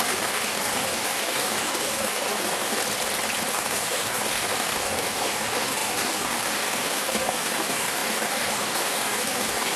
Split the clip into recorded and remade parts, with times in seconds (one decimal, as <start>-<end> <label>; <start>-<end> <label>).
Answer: 0.0-2.8 remade; 2.8-3.5 recorded; 3.5-9.8 remade